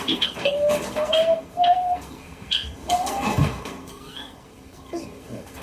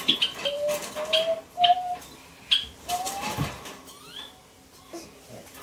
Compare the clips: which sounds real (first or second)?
second